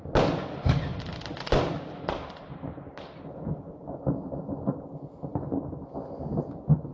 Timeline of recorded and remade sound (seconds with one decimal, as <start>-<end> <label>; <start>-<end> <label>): 0.0-6.9 recorded